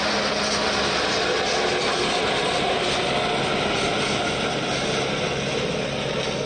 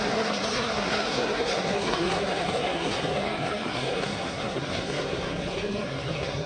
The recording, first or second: first